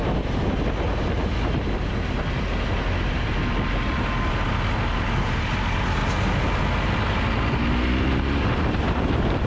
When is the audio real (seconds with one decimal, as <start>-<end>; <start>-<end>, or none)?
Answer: 0.0-5.2; 6.0-8.8